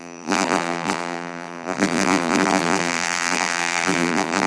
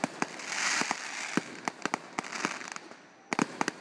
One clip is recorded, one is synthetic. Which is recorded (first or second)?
second